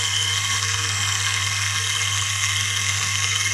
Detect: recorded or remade remade